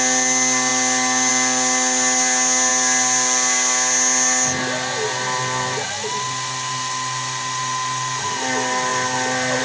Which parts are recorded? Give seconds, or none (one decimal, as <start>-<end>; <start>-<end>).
0.0-9.6